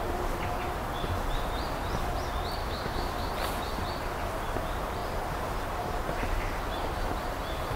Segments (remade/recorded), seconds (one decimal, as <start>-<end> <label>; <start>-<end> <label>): 0.0-2.6 recorded; 2.6-3.3 remade; 3.3-7.8 recorded